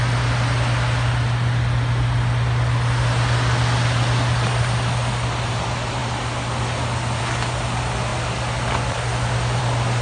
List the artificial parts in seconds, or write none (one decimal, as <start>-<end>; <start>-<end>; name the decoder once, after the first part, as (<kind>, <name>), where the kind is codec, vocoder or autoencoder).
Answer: none